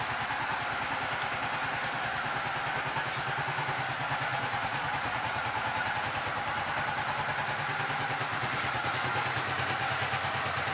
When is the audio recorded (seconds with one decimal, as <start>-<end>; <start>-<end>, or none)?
0.0-4.3; 6.0-8.3; 8.9-10.7